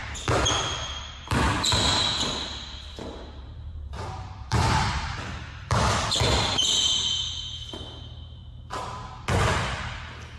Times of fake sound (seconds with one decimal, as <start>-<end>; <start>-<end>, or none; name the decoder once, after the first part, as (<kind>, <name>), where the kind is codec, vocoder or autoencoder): 0.8-1.9 (vocoder, BigVGAN v2); 2.9-8.4